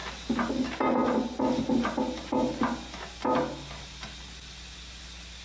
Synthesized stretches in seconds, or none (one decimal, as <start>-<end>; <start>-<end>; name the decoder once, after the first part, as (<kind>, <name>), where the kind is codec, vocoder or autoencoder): none